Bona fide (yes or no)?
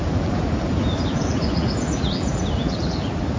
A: no